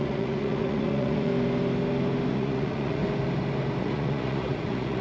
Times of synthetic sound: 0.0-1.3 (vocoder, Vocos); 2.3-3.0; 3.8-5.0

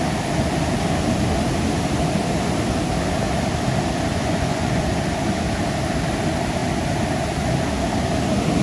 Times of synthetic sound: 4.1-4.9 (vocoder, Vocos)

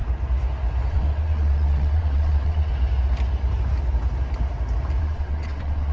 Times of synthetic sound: 0.9-2.7 (vocoder, WaveNeXt); 5.0-5.9

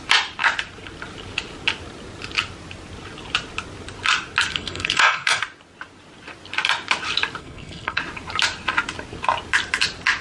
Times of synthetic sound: 4.5-5.4 (codec, SNAC); 7.4-8.0

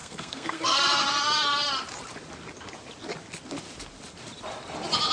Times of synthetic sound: 0.0-0.8 (codec, SNAC)

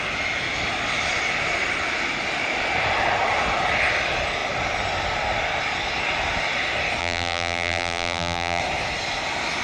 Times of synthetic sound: 7.0-8.6 (vocoder, BigVGAN v2)

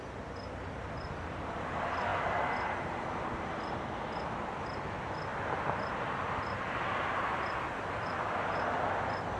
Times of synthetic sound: none

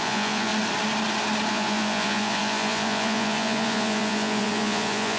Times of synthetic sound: 0.0-0.5 (vocoder, Vocos); 1.5-5.2